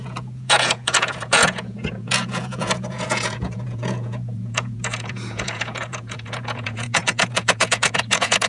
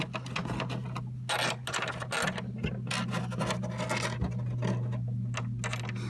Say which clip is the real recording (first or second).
second